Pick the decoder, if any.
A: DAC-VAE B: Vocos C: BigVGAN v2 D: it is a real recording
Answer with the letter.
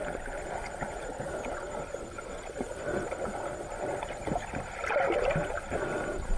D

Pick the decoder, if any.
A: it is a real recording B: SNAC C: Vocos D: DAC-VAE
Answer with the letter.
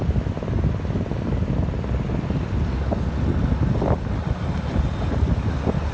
A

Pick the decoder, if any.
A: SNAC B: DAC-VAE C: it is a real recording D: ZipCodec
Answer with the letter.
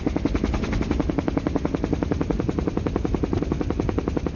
C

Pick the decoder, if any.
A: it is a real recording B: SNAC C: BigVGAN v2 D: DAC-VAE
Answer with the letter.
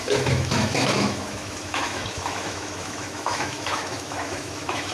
D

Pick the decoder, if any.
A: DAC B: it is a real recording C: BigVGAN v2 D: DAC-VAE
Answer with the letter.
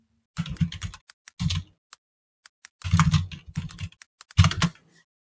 B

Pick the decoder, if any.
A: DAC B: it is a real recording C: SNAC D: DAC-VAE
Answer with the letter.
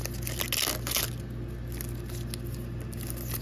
B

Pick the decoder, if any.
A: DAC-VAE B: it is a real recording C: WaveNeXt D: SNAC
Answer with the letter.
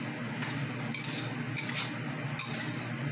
B